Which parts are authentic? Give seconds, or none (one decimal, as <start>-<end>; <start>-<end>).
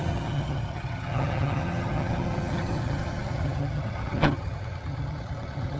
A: none